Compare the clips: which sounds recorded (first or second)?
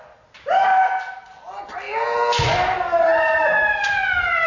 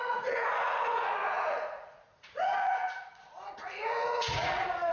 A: first